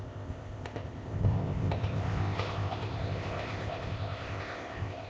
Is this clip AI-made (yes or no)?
yes